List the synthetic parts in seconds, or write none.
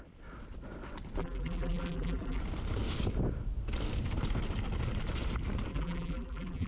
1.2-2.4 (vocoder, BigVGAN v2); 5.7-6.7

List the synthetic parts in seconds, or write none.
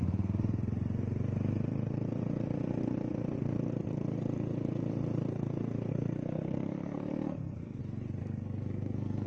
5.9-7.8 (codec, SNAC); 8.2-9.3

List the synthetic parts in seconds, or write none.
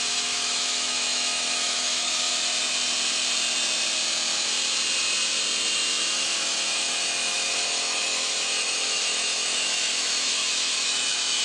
0.0-2.3 (autoencoder, DAC-VAE); 6.1-11.4